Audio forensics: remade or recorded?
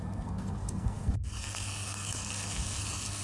remade